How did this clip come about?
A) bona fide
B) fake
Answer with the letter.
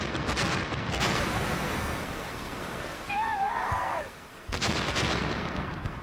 B